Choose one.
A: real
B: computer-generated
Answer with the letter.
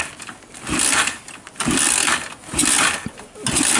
A